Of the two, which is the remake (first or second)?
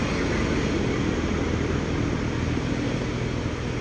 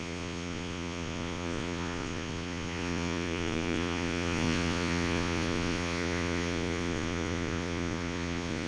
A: second